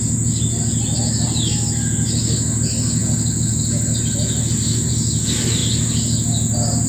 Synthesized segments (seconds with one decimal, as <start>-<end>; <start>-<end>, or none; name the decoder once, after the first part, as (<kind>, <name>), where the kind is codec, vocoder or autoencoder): none